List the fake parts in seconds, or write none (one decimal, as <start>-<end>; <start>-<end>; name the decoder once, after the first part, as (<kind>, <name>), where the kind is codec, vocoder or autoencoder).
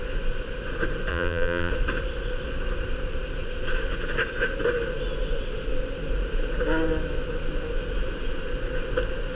1.1-1.7 (vocoder, BigVGAN v2)